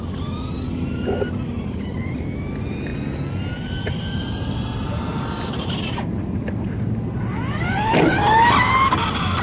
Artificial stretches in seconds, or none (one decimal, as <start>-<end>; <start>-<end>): 5.1-7.8